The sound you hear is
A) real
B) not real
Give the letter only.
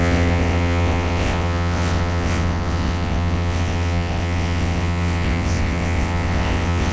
B